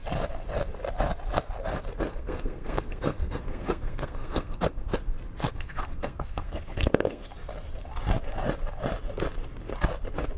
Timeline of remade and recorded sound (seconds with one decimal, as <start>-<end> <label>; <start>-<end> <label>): 0.0-2.1 recorded; 2.1-4.9 remade; 4.9-5.5 recorded; 5.5-7.3 remade; 7.3-10.4 recorded